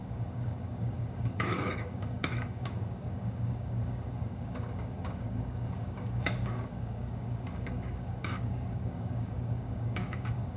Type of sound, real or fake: fake